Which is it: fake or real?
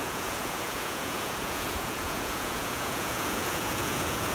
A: fake